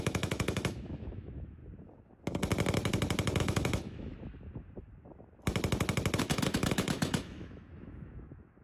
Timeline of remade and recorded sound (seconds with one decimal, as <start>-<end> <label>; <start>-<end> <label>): 0.0-1.6 remade; 1.6-3.4 recorded; 3.4-4.1 remade; 4.1-6.2 recorded; 6.2-8.6 remade